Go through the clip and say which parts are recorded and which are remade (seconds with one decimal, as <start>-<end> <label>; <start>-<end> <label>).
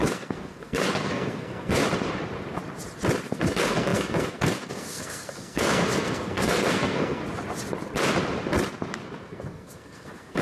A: 0.0-1.8 remade; 1.8-3.3 recorded; 3.3-7.2 remade; 7.2-9.2 recorded; 9.2-10.4 remade